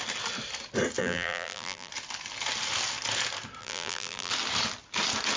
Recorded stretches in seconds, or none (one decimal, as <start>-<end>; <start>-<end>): 0.0-1.0; 1.9-3.6; 4.3-5.4